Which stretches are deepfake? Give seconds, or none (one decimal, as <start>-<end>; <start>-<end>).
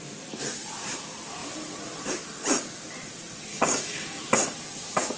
3.5-4.2